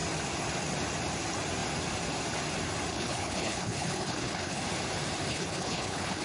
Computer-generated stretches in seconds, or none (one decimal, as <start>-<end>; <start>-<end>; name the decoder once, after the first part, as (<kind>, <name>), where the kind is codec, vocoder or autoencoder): 2.9-4.6 (codec, HILCodec); 5.3-6.2